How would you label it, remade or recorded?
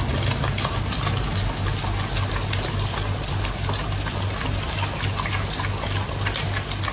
recorded